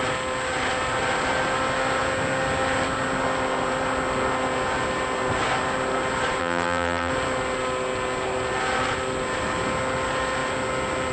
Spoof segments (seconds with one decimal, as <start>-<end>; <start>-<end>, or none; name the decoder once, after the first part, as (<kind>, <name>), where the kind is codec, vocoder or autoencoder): 6.4-7.1 (vocoder, BigVGAN v2)